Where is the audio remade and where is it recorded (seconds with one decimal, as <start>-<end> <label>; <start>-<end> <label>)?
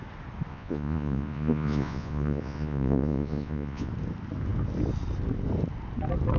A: 0.0-0.5 recorded; 0.5-3.9 remade; 3.9-6.4 recorded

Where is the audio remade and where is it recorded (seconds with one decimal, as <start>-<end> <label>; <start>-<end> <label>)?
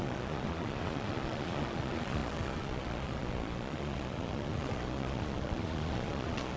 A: 0.0-6.6 remade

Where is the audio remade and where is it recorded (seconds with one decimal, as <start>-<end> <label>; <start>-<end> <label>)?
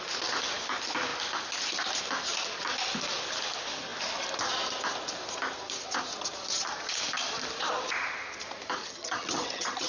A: 0.0-8.8 recorded; 8.8-9.9 remade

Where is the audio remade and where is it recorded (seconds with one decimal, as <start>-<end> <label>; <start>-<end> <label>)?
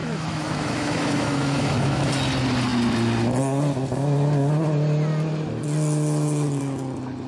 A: 0.0-2.1 remade; 2.1-7.3 recorded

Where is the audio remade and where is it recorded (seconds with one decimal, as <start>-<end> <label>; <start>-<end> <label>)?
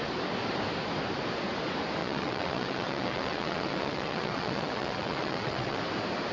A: 0.0-2.0 recorded; 2.0-5.8 remade; 5.8-6.3 recorded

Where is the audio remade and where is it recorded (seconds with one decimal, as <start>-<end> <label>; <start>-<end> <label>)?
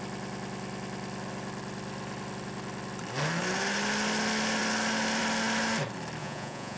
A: 0.0-6.2 recorded; 6.2-6.8 remade